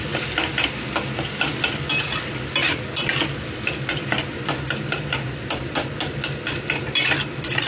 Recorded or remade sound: recorded